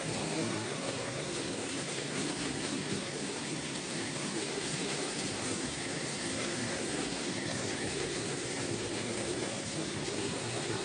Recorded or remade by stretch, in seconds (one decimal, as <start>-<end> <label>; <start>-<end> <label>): 0.0-10.8 remade